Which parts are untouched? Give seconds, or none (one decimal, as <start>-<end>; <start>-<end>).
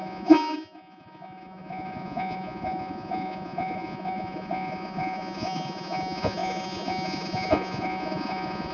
none